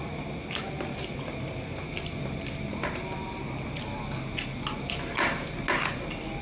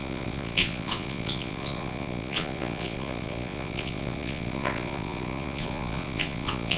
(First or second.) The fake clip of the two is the second